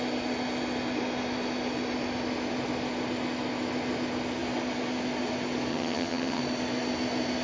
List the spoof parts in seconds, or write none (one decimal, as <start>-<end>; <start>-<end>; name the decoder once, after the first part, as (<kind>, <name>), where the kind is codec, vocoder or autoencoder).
5.7-6.4 (vocoder, HiFi-GAN)